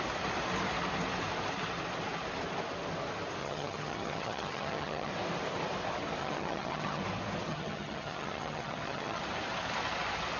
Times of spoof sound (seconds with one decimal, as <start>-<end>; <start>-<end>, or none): 3.4-5.1; 6.2-7.0; 7.5-9.2